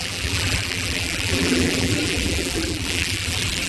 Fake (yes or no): yes